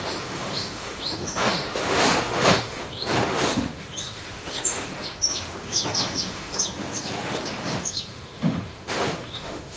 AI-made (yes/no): yes